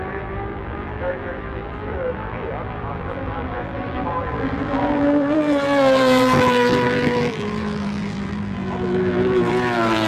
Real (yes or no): no